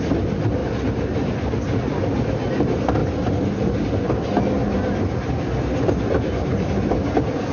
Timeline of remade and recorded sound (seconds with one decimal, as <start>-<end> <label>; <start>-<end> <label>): 0.0-7.5 recorded